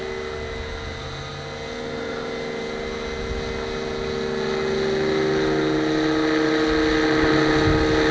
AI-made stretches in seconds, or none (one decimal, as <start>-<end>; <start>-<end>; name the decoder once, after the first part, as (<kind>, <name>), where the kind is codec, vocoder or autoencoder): none